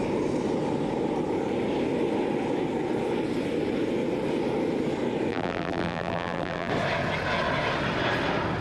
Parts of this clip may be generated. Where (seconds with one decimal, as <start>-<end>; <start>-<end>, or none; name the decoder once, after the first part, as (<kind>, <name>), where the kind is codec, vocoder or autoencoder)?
5.3-6.7 (vocoder, BigVGAN v2)